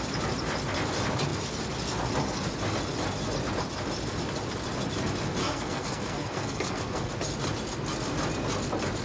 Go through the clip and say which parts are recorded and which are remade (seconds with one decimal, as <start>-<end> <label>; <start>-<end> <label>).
0.0-5.4 recorded; 5.4-7.1 remade; 7.1-9.0 recorded